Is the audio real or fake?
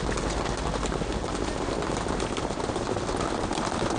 real